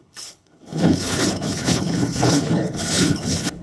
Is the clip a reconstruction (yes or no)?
yes